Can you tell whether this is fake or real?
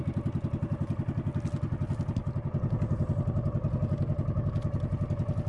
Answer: real